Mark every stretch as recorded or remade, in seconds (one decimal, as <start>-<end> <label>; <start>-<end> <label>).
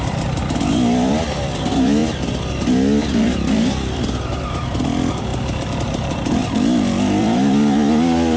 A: 0.0-2.0 remade; 2.0-3.2 recorded; 3.2-6.4 remade; 6.4-7.2 recorded; 7.2-8.4 remade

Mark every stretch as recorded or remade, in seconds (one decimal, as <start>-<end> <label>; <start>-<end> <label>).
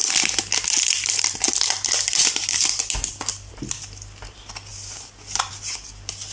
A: 0.0-3.5 remade; 3.5-6.3 recorded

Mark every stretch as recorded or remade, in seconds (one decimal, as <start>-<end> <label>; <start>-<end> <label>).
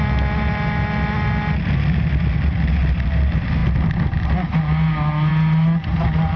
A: 0.0-6.4 recorded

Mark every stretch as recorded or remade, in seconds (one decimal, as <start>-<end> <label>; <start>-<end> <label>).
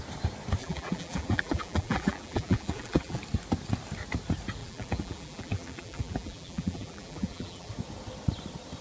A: 0.0-0.6 recorded; 0.6-3.2 remade; 3.2-4.6 recorded; 4.6-7.7 remade; 7.7-8.8 recorded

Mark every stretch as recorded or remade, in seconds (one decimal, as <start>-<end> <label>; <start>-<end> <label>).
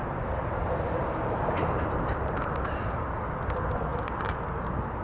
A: 0.0-3.0 remade; 3.0-5.0 recorded